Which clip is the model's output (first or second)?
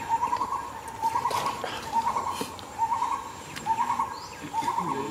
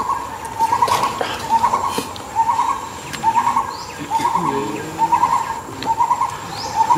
first